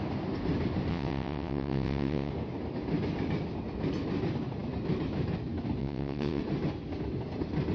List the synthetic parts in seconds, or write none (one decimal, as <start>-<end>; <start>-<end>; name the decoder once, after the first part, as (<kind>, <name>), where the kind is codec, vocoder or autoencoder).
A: 0.9-2.3 (vocoder, WaveNeXt); 5.8-6.4